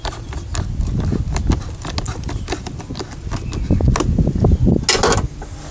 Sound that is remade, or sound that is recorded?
recorded